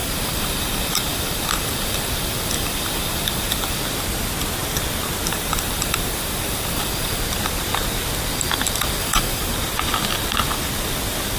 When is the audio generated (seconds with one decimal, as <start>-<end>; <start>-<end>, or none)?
0.0-3.8; 5.3-7.2; 9.0-9.5